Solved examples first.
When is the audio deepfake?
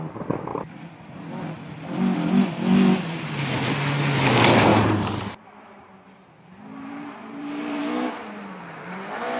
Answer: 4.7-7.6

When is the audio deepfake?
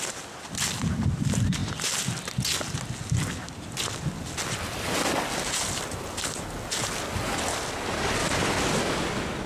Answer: none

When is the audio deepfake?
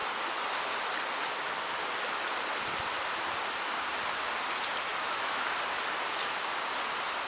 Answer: 4.9-5.4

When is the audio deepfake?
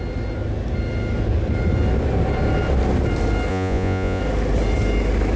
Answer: 3.5-4.2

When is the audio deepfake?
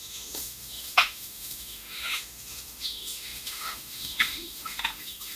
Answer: 0.0-5.4